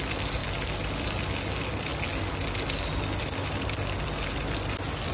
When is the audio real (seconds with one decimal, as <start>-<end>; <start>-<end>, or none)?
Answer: 0.0-5.1